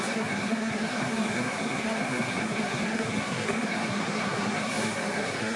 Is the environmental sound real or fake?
fake